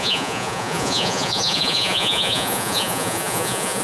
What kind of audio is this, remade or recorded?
remade